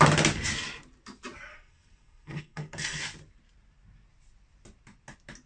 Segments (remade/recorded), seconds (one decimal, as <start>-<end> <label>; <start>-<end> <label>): 0.0-1.5 recorded; 1.5-3.0 remade; 3.0-5.5 recorded